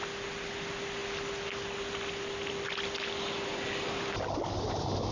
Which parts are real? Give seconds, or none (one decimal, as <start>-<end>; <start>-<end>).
0.0-5.1